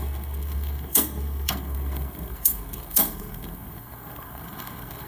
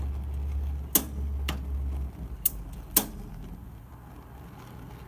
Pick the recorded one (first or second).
second